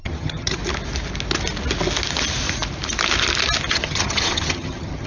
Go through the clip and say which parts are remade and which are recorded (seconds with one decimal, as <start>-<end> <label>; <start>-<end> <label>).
0.0-0.6 remade; 0.6-3.7 recorded; 3.7-5.1 remade